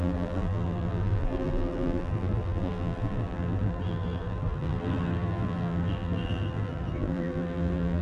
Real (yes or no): no